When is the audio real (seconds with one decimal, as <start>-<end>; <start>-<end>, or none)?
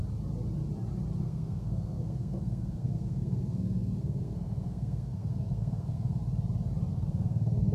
0.0-1.2; 6.2-6.9